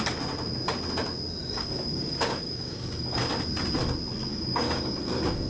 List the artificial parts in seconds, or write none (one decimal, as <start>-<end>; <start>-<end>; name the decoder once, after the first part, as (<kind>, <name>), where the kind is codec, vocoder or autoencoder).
1.4-3.2 (codec, DAC); 4.3-5.5